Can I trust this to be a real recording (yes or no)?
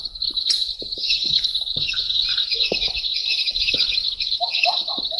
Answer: no